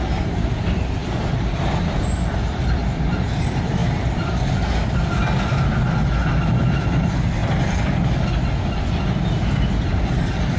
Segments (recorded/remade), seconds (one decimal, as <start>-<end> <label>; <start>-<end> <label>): 0.0-1.0 recorded; 1.0-3.2 remade; 3.2-10.6 recorded